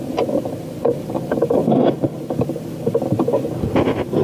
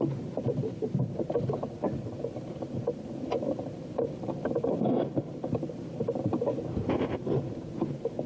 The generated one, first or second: second